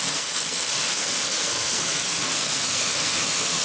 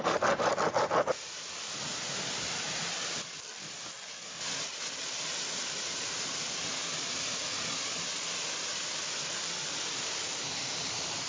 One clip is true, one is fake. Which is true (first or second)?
second